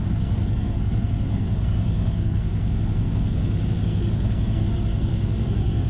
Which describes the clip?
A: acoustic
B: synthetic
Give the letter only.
B